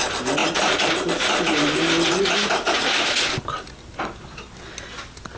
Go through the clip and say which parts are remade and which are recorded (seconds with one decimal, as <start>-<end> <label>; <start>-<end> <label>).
0.0-0.4 recorded; 0.4-3.1 remade; 3.1-5.4 recorded